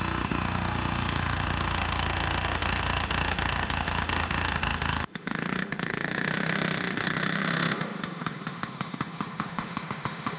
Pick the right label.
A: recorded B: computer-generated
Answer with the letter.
B